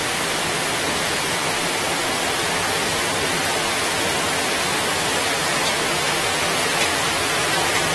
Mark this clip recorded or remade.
recorded